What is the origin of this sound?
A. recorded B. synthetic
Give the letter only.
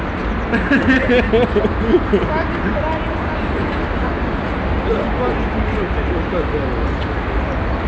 A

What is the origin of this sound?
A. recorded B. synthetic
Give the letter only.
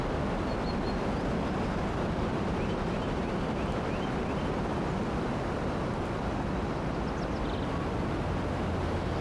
A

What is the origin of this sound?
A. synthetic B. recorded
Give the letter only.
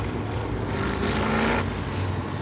B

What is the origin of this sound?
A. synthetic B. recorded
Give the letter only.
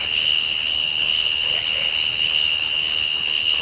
A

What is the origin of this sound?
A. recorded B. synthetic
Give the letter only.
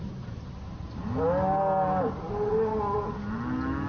A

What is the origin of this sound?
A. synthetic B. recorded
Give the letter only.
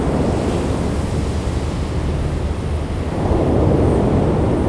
B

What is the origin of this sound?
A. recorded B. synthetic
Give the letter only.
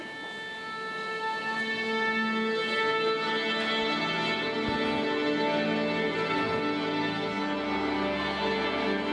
A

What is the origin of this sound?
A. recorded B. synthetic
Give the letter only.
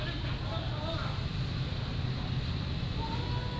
A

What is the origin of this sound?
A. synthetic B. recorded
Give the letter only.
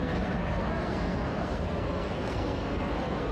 A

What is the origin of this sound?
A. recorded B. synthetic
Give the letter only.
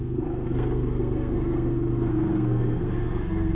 B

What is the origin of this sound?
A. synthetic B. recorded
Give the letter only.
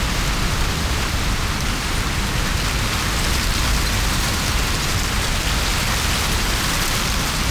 B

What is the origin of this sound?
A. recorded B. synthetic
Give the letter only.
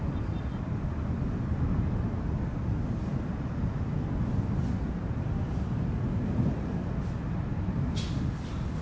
A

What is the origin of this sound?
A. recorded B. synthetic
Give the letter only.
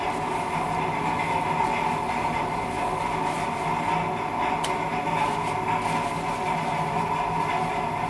A